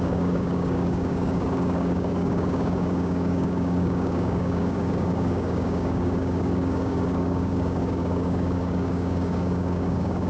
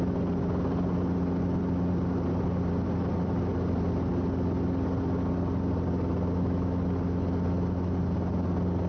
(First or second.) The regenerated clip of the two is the first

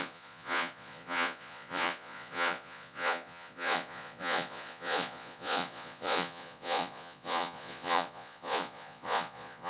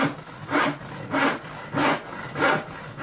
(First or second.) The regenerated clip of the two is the first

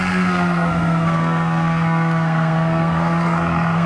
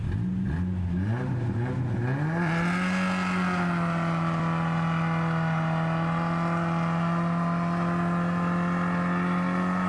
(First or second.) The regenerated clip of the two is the first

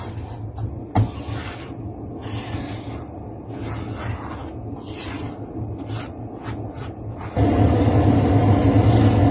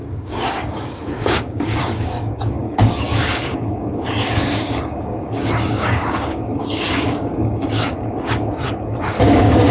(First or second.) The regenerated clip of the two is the second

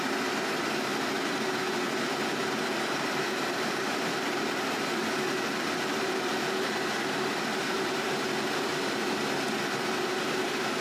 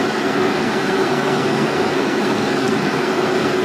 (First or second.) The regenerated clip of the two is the second